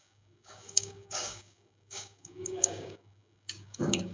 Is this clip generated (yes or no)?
yes